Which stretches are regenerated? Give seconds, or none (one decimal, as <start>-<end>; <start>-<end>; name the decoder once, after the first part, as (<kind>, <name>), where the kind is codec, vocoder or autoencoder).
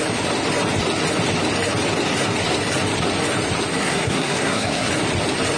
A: 3.8-4.9 (codec, SNAC)